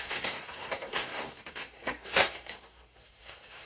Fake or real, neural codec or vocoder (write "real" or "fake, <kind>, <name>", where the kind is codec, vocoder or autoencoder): fake, codec, SNAC